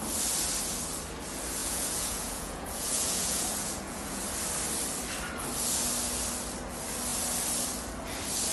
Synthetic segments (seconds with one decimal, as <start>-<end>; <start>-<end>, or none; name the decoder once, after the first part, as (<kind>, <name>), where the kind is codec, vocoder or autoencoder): 1.6-4.2 (vocoder, Vocos)